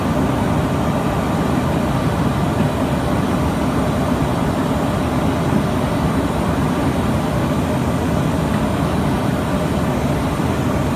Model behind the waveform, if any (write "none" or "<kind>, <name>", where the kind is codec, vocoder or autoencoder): none